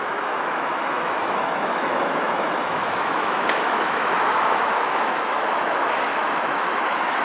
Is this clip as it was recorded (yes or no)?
no